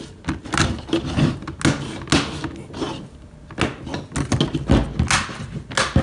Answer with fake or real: real